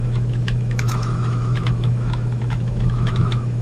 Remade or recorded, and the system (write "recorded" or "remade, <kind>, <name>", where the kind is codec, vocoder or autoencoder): remade, autoencoder, DAC-VAE